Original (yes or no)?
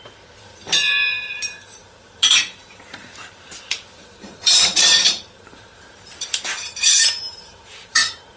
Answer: no